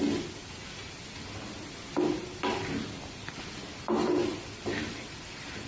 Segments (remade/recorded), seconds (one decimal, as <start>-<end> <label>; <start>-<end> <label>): 0.0-5.7 recorded